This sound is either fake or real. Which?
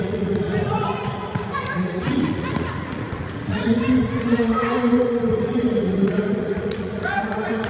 fake